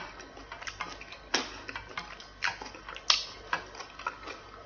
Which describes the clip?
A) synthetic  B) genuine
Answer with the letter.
B